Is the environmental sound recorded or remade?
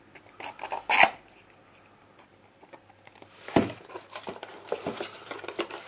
recorded